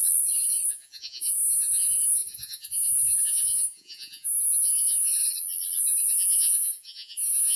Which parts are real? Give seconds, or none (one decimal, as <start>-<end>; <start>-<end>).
0.0-0.7; 5.1-6.1